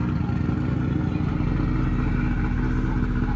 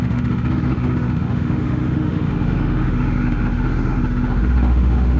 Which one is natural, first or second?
first